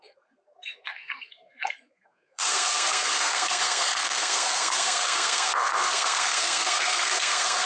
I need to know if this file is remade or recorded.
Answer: remade